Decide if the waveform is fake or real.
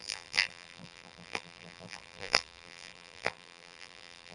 fake